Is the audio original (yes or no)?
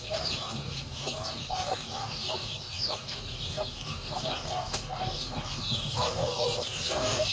no